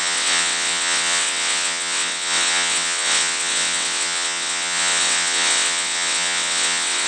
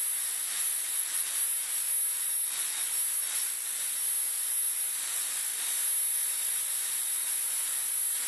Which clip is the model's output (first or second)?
first